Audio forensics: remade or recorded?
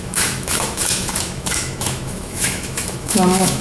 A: remade